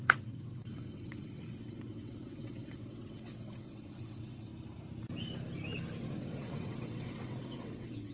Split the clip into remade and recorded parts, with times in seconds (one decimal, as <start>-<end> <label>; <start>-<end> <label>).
0.0-4.5 remade; 4.5-6.0 recorded; 6.0-8.1 remade